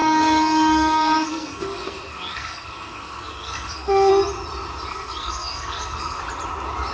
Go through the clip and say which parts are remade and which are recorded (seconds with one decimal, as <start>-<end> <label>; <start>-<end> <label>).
0.0-4.1 remade; 4.1-4.9 recorded; 4.9-6.2 remade; 6.2-6.9 recorded